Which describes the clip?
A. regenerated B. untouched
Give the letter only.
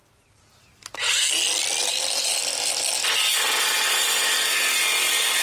B